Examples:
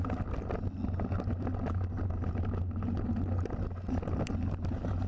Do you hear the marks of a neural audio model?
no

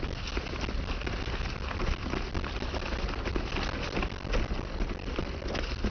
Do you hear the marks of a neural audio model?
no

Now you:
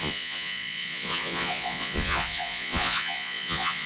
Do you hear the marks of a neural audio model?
yes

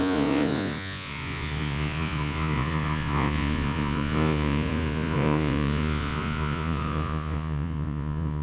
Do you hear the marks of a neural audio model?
yes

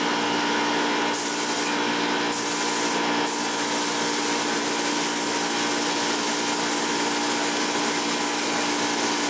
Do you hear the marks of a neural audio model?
no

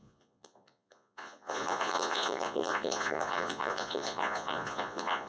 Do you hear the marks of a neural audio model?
yes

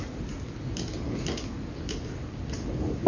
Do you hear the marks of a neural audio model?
no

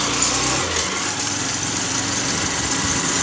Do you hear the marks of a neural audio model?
no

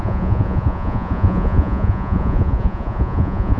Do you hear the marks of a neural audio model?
yes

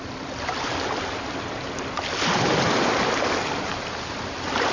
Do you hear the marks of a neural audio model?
no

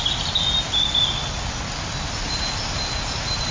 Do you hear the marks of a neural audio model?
no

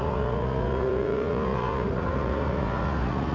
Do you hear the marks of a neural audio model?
yes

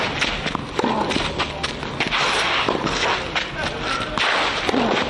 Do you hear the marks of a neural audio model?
no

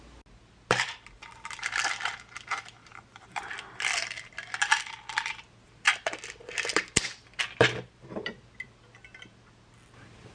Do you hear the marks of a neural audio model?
no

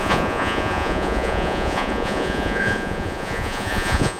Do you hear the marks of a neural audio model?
yes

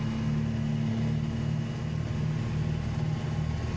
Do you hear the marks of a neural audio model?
no